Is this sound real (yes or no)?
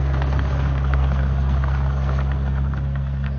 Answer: no